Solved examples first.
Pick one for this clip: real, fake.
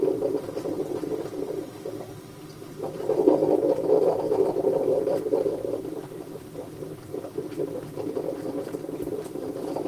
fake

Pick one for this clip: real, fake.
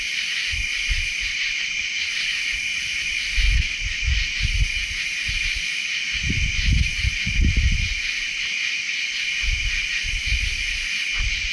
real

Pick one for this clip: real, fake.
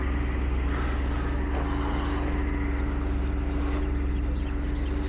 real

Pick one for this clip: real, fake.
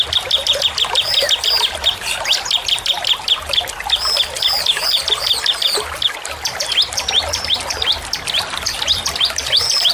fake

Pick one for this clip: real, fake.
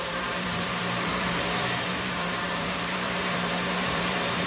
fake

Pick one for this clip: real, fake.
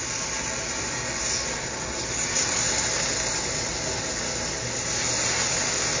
real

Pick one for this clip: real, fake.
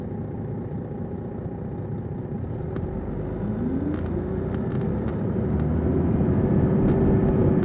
real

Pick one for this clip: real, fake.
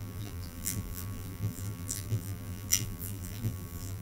fake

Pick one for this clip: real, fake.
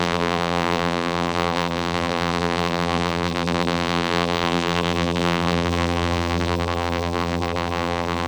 fake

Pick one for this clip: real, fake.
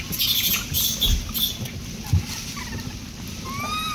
real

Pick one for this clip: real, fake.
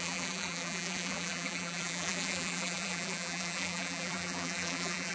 fake